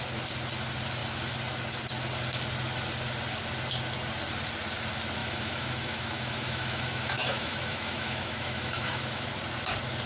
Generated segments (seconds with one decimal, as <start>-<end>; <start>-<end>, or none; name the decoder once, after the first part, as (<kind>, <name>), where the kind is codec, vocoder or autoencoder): 5.2-9.2 (autoencoder, DAC-VAE)